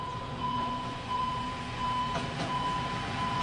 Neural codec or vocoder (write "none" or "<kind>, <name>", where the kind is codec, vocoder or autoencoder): vocoder, Vocos